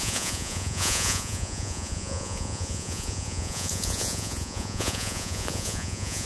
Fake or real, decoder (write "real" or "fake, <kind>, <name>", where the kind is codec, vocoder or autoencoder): fake, vocoder, Vocos